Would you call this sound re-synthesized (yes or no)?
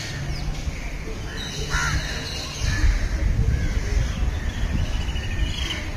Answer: no